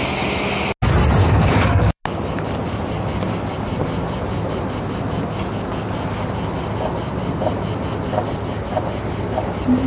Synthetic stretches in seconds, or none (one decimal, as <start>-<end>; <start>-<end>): 1.2-2.0